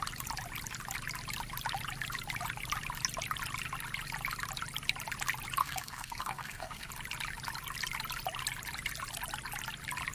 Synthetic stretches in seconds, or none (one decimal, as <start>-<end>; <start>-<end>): 5.6-6.9